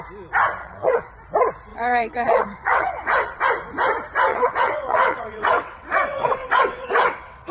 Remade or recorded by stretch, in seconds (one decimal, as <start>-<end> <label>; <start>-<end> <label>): 0.0-0.6 recorded; 0.6-1.1 remade; 1.1-1.7 recorded; 1.7-3.4 remade; 3.4-4.3 recorded; 4.3-7.5 remade